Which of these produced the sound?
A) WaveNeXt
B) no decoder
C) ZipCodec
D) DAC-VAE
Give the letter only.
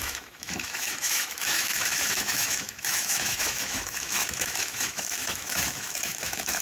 D